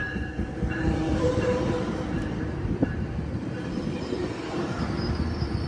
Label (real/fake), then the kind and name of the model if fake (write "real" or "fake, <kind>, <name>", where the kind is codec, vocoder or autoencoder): fake, vocoder, BigVGAN v2